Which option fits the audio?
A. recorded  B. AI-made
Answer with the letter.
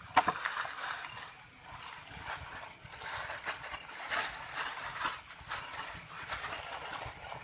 A